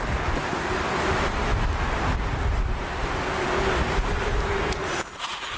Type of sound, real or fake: real